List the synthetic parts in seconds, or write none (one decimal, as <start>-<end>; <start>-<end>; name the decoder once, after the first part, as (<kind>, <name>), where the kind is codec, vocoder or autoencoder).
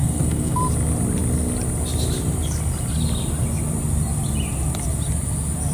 0.0-0.6 (codec, SNAC)